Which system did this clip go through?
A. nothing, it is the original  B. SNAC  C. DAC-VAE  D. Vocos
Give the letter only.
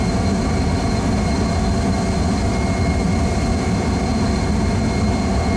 A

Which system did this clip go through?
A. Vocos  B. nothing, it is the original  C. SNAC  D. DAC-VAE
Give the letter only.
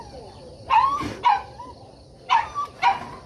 B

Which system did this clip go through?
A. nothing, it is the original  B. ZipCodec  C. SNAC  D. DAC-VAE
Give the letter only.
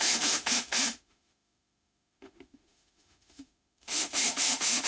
D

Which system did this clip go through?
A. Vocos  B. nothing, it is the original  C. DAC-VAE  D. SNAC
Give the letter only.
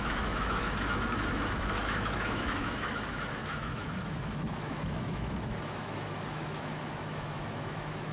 C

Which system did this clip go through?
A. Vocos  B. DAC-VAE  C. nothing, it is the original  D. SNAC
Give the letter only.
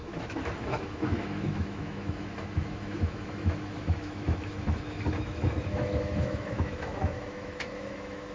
B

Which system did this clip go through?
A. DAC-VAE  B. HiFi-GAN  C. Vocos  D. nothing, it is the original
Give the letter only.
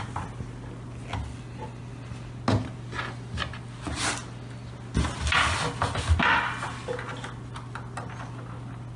D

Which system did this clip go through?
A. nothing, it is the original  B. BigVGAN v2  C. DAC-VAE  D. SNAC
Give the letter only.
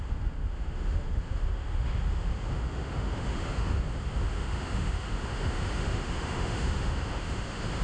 C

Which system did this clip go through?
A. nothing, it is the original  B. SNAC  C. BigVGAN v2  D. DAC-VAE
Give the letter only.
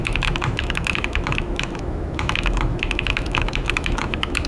D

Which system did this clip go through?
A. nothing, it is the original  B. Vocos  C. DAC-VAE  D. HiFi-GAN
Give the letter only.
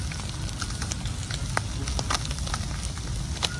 A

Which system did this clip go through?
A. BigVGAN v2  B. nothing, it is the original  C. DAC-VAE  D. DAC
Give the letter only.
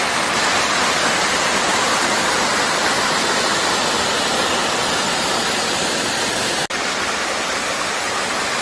B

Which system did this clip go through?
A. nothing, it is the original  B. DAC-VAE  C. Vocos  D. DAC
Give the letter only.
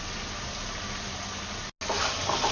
A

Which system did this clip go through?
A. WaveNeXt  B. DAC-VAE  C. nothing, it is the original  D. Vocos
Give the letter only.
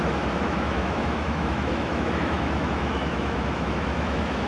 B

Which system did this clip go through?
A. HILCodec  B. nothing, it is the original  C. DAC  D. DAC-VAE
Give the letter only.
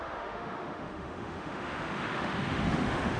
D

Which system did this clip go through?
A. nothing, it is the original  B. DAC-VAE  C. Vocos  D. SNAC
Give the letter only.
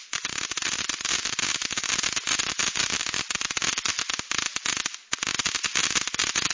A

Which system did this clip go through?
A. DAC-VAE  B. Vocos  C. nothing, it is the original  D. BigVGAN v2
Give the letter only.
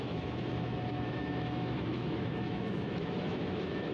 A